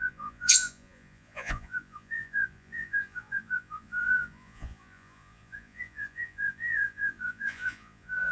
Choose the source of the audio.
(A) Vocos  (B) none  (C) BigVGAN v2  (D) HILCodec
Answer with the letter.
A